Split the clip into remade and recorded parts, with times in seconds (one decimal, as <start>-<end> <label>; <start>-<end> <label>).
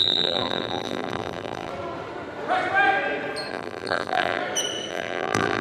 0.0-1.7 remade; 1.7-3.5 recorded; 3.5-4.4 remade; 4.4-4.9 recorded; 4.9-5.6 remade